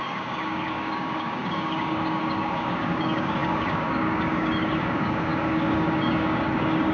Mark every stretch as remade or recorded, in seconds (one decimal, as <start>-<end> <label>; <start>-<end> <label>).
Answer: 0.0-6.9 remade